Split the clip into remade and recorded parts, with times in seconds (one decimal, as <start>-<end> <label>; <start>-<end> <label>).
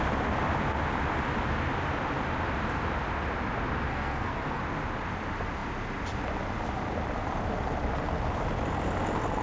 0.0-3.9 recorded; 3.9-4.6 remade; 4.6-9.4 recorded